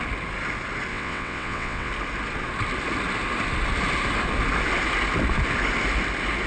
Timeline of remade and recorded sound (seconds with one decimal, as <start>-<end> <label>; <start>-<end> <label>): 0.0-0.9 recorded; 0.9-1.9 remade; 1.9-6.5 recorded